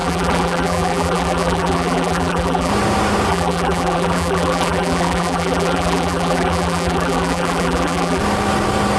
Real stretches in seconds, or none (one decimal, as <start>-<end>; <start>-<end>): 2.7-3.3; 8.2-9.0